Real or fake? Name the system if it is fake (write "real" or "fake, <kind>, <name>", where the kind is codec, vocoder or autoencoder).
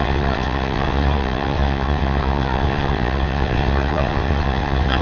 fake, vocoder, WaveNeXt